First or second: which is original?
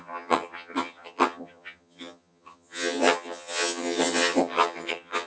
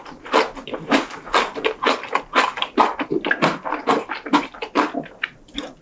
second